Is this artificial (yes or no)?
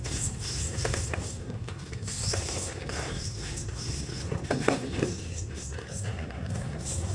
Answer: yes